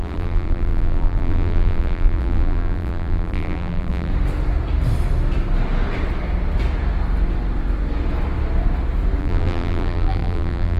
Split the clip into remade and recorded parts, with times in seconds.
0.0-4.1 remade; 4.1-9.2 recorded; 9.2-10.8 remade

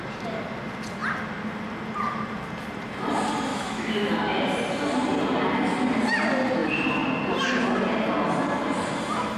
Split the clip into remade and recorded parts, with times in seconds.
0.0-3.5 recorded; 3.5-4.1 remade; 4.1-9.4 recorded

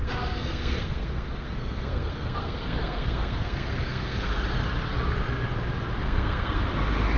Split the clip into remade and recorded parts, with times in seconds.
0.0-4.3 remade; 4.3-6.0 recorded; 6.0-6.6 remade; 6.6-7.2 recorded